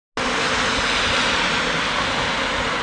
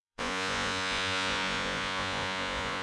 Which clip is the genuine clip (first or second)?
first